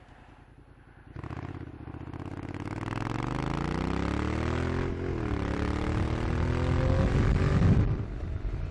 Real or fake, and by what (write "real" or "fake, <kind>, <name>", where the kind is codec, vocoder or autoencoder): real